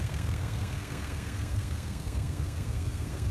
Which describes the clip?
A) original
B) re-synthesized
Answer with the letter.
B